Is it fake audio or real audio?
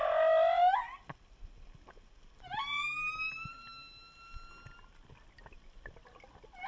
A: real